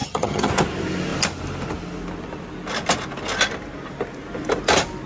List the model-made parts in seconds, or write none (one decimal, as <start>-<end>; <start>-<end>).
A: 0.0-0.5